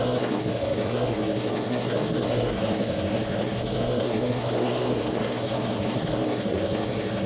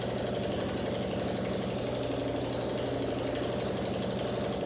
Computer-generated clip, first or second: first